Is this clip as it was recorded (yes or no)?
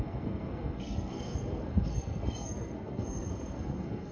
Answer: no